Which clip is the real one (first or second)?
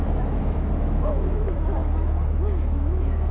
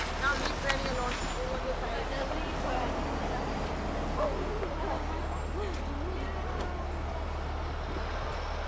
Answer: second